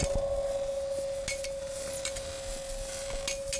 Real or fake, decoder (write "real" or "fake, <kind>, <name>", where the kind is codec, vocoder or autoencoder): real